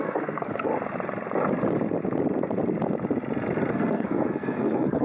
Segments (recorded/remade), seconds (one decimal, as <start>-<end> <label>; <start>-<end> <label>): 0.0-0.7 remade; 0.7-3.7 recorded; 3.7-5.0 remade